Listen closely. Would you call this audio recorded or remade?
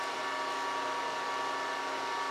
recorded